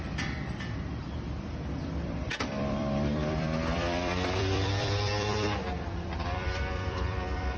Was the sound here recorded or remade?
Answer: remade